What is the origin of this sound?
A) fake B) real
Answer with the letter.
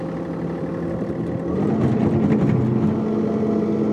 B